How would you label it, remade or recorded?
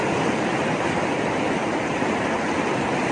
remade